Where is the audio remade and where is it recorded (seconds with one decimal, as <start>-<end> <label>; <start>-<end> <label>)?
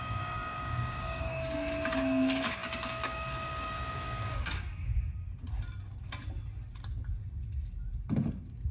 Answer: 0.0-5.1 remade; 5.1-8.7 recorded